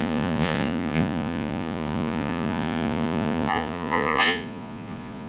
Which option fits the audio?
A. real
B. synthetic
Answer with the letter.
B